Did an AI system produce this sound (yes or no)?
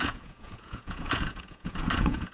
yes